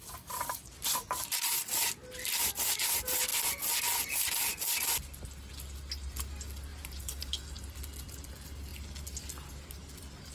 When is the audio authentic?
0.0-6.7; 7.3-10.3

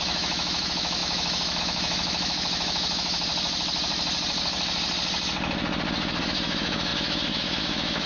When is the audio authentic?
3.3-6.2

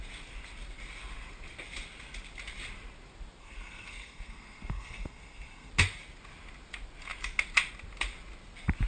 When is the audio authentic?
0.0-3.4; 5.7-8.9

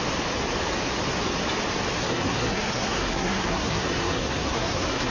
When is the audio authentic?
0.0-2.0

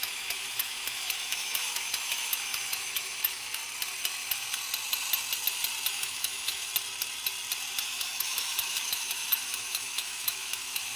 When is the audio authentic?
3.6-5.9; 6.7-7.8

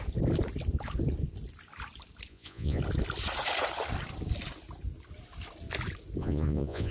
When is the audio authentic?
0.0-2.3; 2.8-6.2

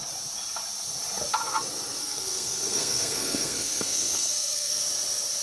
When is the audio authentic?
0.0-2.0; 4.8-5.4